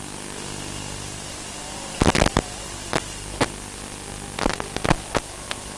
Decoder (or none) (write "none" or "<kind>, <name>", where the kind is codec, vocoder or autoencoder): none